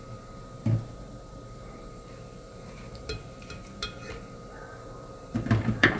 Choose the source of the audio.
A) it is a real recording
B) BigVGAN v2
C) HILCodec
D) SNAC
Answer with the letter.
B